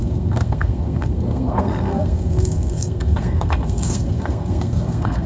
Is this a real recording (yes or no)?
no